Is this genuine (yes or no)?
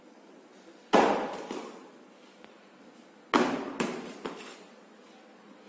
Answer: yes